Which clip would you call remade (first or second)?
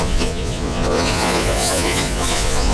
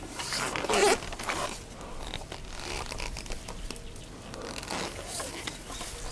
first